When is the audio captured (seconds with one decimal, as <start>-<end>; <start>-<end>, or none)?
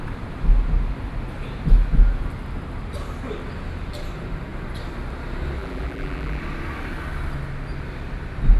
0.0-5.6; 6.4-8.6